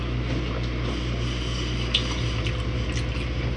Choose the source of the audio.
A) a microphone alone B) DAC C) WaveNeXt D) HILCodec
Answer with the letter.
A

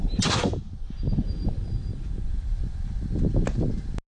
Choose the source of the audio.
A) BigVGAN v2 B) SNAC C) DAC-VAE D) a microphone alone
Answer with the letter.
D